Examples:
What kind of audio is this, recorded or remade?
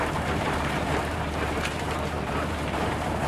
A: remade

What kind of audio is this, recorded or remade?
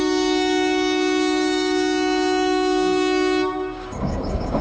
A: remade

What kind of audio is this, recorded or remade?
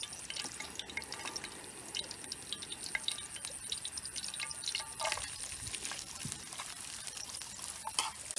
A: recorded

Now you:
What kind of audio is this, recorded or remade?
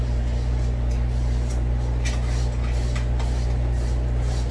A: recorded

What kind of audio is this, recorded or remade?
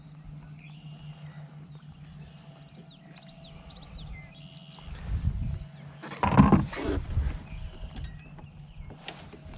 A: recorded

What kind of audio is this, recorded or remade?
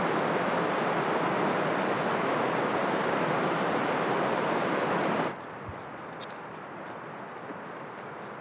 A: recorded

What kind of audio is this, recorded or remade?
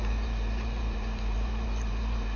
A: remade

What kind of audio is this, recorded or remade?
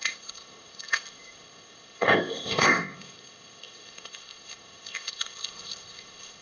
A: remade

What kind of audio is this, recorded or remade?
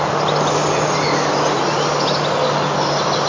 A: recorded